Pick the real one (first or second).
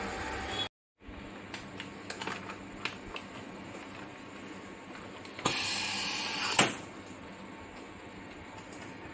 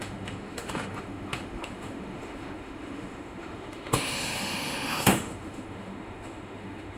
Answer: first